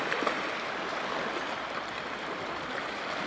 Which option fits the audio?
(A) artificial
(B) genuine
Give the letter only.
B